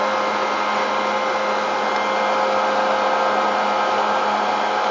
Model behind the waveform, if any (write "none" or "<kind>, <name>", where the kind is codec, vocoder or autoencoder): none